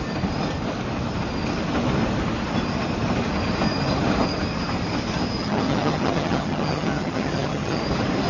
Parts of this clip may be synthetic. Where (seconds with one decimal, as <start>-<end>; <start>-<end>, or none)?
5.4-7.8